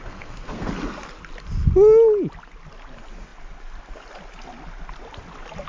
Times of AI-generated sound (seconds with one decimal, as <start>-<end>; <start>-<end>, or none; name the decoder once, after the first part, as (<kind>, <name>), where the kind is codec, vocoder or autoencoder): 0.0-0.7 (codec, SNAC)